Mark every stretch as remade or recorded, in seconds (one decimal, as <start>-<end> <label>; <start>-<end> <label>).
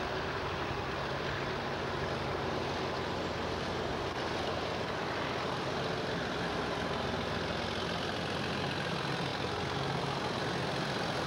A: 0.0-11.3 recorded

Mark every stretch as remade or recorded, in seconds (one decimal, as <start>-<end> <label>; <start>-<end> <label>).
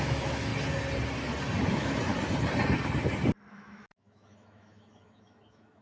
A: 0.0-0.5 remade; 0.5-1.7 recorded; 1.7-2.1 remade; 2.1-3.5 recorded; 3.5-5.8 remade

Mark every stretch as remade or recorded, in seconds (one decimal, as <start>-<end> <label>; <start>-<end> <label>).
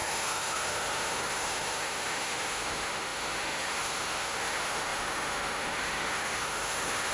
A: 0.0-7.1 remade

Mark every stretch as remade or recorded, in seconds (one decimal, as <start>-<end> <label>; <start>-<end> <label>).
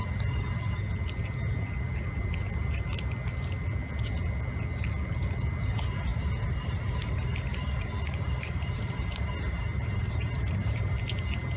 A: 0.0-6.1 recorded; 6.1-11.0 remade; 11.0-11.6 recorded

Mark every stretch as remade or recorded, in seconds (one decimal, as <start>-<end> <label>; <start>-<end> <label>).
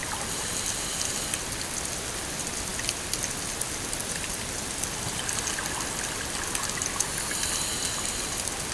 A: 0.0-8.7 recorded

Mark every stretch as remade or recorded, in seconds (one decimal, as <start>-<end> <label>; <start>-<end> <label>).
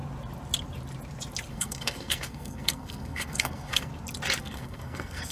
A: 0.0-1.5 recorded; 1.5-3.9 remade; 3.9-4.4 recorded; 4.4-5.3 remade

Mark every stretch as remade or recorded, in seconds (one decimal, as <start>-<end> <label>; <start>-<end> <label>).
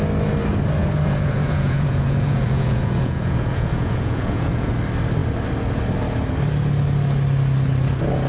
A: 0.0-0.8 recorded; 0.8-4.7 remade; 4.7-8.3 recorded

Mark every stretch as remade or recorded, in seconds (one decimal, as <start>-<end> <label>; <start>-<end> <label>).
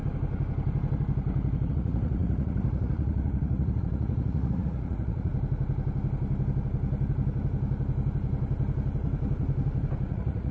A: 0.0-1.7 recorded; 1.7-5.3 remade; 5.3-10.1 recorded; 10.1-10.5 remade